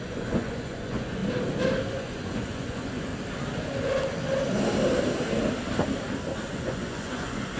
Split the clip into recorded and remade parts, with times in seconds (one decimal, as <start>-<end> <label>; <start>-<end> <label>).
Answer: 0.0-1.2 remade; 1.2-1.9 recorded; 1.9-3.1 remade; 3.1-6.5 recorded; 6.5-7.6 remade